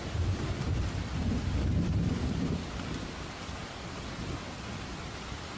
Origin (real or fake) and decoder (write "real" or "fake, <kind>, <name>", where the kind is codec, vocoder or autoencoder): fake, vocoder, BigVGAN v2